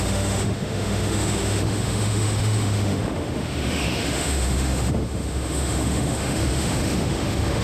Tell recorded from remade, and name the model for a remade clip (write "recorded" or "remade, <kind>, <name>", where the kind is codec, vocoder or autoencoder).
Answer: remade, autoencoder, DAC-VAE